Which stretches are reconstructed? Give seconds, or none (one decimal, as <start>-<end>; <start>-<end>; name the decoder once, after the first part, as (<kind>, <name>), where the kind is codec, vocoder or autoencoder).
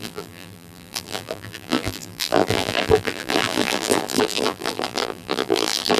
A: 0.0-6.0 (vocoder, BigVGAN v2)